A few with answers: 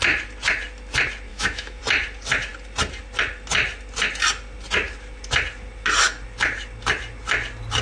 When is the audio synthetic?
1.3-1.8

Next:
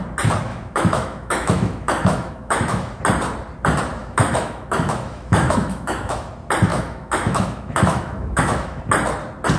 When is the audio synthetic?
0.5-3.0; 4.0-6.3; 6.7-8.8

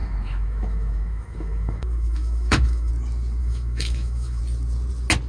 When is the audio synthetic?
0.0-2.9; 3.4-4.4

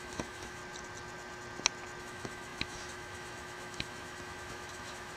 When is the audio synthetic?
0.0-0.6; 2.0-5.2

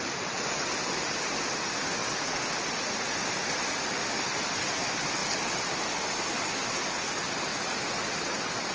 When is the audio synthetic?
none